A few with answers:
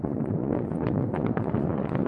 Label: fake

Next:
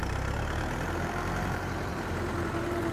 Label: fake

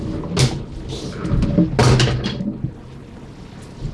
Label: real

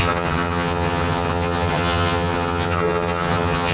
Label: fake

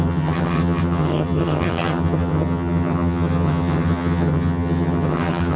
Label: fake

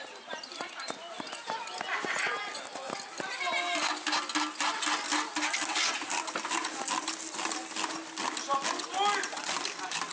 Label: real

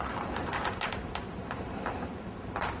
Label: real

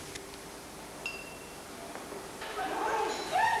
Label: real